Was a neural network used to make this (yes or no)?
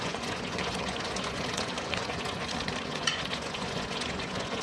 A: yes